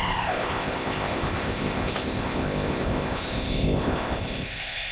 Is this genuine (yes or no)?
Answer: no